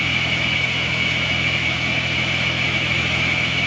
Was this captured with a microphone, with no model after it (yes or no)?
no